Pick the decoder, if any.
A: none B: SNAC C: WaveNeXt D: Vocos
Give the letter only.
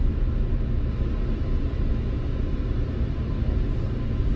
A